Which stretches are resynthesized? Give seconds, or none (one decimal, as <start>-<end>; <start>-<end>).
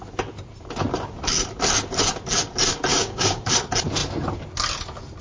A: 2.9-3.5